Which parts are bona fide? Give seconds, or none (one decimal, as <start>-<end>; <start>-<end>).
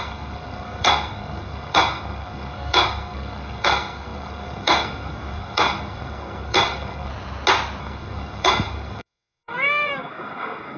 7.1-7.8